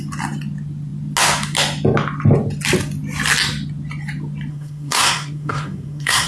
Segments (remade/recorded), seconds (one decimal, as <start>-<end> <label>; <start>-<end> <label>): 0.0-4.5 recorded; 4.5-6.3 remade